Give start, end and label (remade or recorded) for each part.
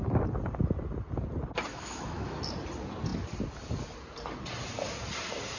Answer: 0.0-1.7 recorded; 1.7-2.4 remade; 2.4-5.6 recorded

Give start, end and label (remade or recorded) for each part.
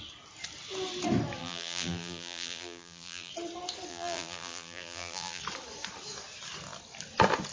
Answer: 0.0-1.4 recorded; 1.4-3.3 remade; 3.3-3.9 recorded; 3.9-5.4 remade; 5.4-7.5 recorded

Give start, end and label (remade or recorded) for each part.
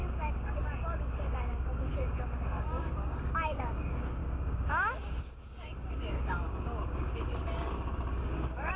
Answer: 0.0-8.8 remade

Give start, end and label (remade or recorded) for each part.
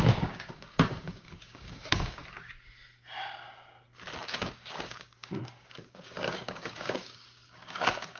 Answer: 0.0-2.2 remade; 2.2-4.2 recorded; 4.2-8.2 remade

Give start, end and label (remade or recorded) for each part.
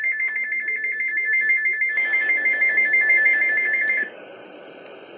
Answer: 0.0-1.1 recorded; 1.1-4.2 remade; 4.2-5.2 recorded